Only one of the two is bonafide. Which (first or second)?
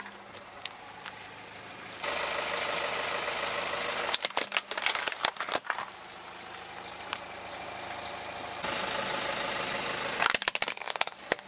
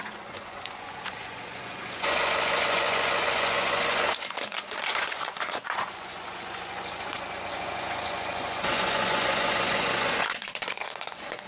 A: first